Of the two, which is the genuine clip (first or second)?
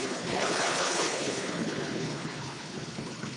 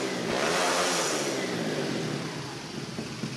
second